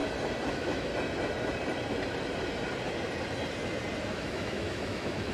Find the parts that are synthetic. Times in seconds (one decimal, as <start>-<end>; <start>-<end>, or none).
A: 0.5-0.9; 4.1-5.3